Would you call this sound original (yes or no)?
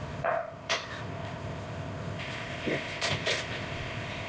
no